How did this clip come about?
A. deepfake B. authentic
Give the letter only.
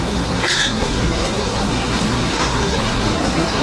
A